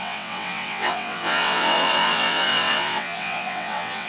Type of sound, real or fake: fake